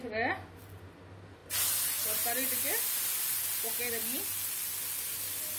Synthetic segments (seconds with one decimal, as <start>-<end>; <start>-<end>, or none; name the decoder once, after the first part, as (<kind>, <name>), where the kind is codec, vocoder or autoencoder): none